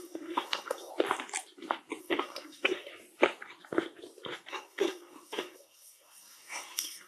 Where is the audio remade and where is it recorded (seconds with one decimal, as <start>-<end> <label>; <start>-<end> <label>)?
0.0-0.9 remade; 0.9-2.0 recorded; 2.0-2.9 remade; 2.9-4.5 recorded; 4.5-7.1 remade